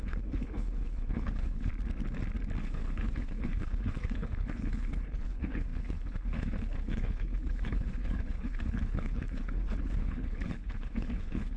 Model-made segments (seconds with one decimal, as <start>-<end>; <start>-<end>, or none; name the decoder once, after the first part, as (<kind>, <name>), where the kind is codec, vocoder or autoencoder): 0.0-1.7 (codec, HILCodec); 2.6-11.6